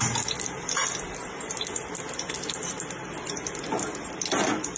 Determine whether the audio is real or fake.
real